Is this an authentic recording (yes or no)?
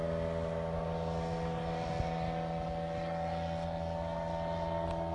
yes